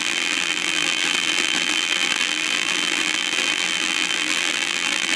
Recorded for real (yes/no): no